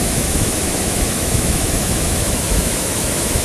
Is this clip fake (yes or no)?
yes